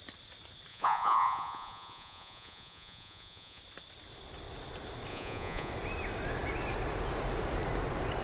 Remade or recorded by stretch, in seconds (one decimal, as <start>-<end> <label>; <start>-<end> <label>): 0.0-0.7 recorded; 0.7-3.6 remade; 3.6-5.1 recorded; 5.1-5.7 remade; 5.7-8.2 recorded